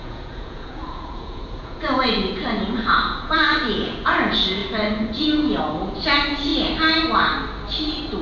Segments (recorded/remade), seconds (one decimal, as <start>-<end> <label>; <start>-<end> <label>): 0.0-6.5 remade; 6.5-8.2 recorded